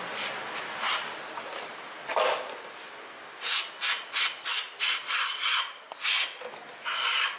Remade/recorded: recorded